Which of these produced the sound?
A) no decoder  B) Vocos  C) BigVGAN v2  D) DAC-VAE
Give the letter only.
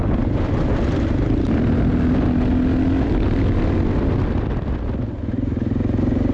A